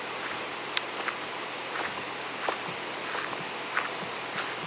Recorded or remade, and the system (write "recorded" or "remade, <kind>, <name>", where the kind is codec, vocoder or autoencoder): recorded